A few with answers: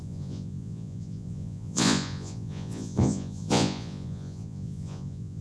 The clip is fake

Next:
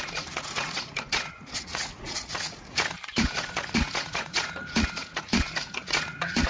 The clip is fake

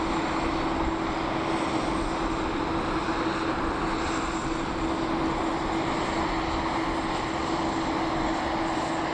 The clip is real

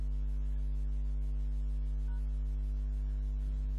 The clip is real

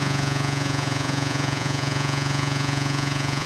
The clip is fake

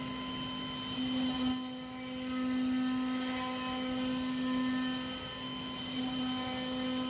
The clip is real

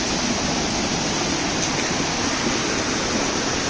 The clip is real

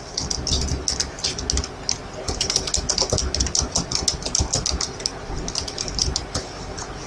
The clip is real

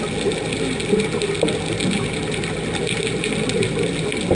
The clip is real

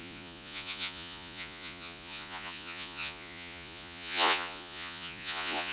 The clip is fake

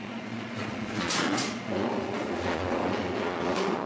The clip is fake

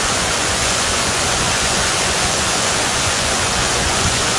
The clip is fake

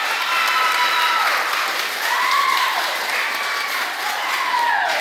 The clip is real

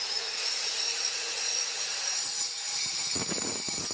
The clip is fake